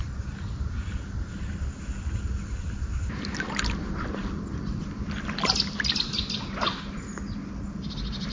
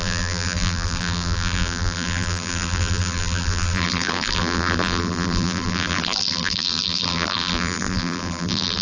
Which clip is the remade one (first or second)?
second